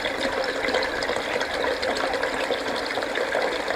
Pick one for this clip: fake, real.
real